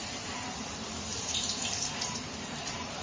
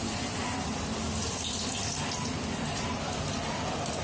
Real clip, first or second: second